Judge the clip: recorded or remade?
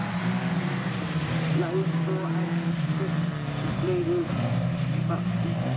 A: recorded